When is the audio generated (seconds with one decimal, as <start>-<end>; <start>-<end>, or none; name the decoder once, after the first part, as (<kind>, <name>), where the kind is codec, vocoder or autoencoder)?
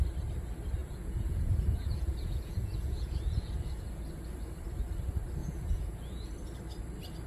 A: 0.8-3.5 (vocoder, Vocos); 5.4-6.3